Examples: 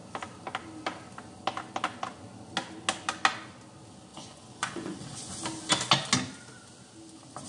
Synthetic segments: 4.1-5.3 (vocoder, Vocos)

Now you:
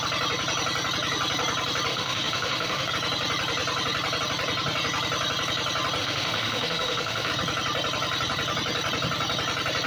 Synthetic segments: 1.9-2.9 (autoencoder, DAC-VAE); 6.0-7.3

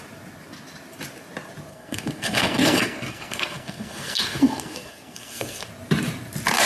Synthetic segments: 1.7-5.7 (codec, SNAC)

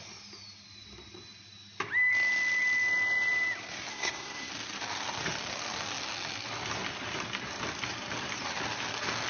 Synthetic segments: 3.9-4.5 (codec, SNAC)

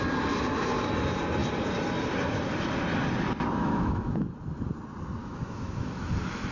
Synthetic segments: 3.6-4.3 (autoencoder, DAC-VAE); 5.2-6.1